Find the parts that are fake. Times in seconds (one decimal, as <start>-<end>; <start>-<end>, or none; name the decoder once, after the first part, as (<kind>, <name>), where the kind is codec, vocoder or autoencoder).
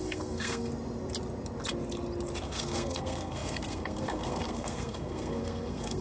0.0-0.7 (codec, SNAC); 2.4-6.0